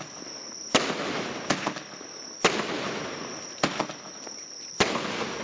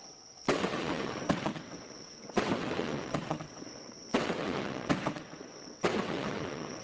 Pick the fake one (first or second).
second